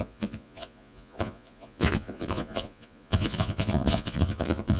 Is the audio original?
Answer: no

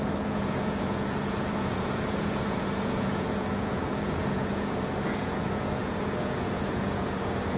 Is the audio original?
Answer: no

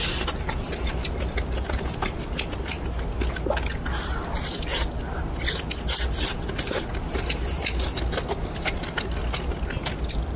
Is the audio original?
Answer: yes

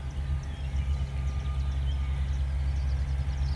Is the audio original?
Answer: yes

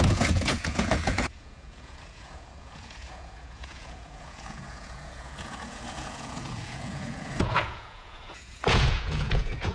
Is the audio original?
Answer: no